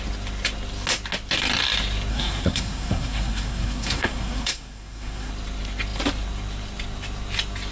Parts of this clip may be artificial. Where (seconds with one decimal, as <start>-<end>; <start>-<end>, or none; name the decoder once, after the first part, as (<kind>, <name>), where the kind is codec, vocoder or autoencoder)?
2.1-5.3 (codec, SNAC)